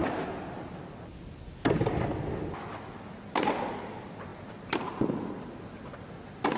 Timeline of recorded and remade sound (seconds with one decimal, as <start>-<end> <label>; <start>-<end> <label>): 0.0-6.6 recorded